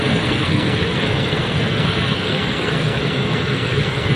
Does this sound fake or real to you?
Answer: fake